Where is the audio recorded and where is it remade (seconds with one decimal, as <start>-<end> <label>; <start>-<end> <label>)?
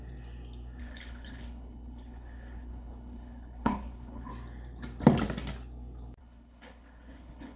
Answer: 0.0-0.8 recorded; 0.8-4.3 remade; 4.3-6.2 recorded; 6.2-7.6 remade